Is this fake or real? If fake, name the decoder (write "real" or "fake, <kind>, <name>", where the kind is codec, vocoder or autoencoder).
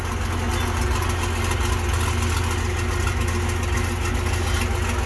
real